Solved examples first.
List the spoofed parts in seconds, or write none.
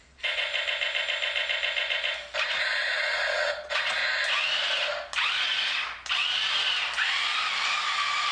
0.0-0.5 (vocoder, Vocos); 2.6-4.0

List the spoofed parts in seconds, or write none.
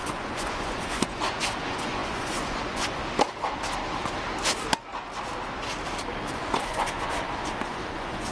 0.0-3.0 (vocoder, Vocos); 6.3-8.3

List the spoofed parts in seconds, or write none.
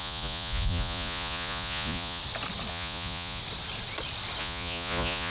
0.0-2.2 (vocoder, Vocos); 2.7-3.4; 4.4-5.3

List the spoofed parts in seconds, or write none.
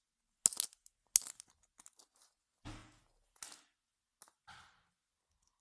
2.8-3.4 (vocoder, Vocos)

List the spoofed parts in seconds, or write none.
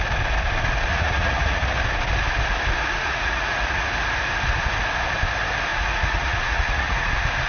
0.9-1.8 (vocoder, Vocos); 3.0-3.9; 5.7-7.1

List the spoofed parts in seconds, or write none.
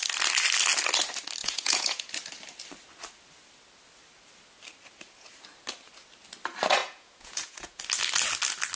1.4-2.1 (vocoder, Vocos); 6.8-7.8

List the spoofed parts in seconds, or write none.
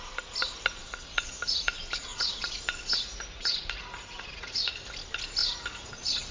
0.8-1.7 (vocoder, Vocos); 2.1-4.7; 5.4-6.3